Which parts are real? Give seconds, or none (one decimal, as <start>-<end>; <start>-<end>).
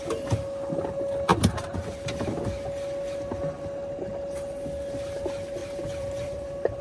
0.0-5.6